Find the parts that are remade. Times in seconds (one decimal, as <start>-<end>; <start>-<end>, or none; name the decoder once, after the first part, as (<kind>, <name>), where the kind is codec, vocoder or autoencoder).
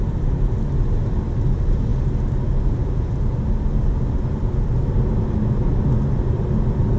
none